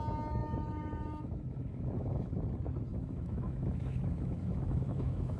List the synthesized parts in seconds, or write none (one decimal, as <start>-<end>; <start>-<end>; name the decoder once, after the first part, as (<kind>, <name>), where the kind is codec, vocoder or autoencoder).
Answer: 0.4-2.4 (autoencoder, DAC-VAE); 2.9-5.4

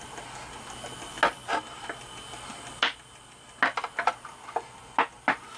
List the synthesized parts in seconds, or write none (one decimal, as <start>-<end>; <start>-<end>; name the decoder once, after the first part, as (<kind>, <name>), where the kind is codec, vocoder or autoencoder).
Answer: none

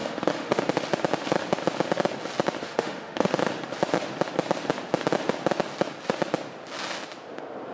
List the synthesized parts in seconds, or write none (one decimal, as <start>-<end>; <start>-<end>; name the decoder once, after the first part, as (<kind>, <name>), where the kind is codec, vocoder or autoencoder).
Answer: 0.0-0.6 (autoencoder, DAC-VAE); 2.6-3.4

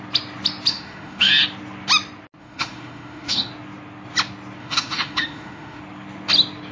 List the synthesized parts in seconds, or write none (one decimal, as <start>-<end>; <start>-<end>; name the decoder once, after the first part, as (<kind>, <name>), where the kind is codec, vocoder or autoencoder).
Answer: 0.7-1.3 (autoencoder, DAC-VAE); 2.4-3.5; 4.6-5.8

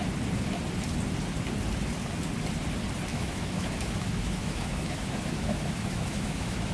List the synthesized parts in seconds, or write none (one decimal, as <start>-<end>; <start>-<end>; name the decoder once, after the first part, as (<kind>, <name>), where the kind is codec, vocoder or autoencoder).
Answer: 3.1-6.7 (autoencoder, DAC-VAE)

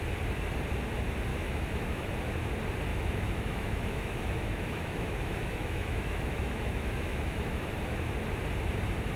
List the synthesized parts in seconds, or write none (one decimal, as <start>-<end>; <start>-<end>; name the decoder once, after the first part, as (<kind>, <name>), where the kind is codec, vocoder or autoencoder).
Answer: 1.3-2.1 (autoencoder, DAC-VAE); 2.9-7.8